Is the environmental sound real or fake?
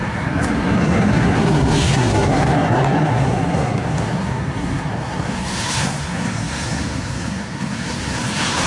fake